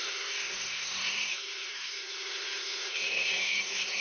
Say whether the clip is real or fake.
fake